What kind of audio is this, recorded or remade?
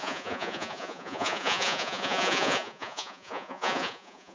remade